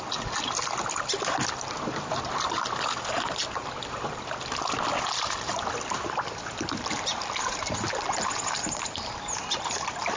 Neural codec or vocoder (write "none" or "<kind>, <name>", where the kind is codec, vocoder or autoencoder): none